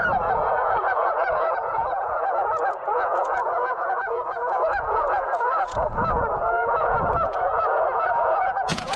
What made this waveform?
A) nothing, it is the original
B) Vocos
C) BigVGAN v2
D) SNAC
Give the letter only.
B